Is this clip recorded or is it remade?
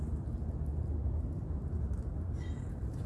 recorded